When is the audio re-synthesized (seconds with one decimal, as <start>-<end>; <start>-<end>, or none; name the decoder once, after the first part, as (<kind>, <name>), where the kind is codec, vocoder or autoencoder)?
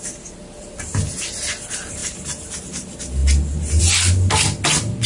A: none